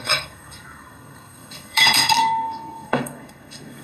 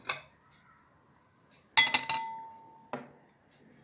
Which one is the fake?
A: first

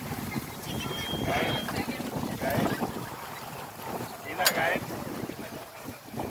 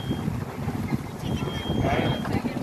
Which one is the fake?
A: first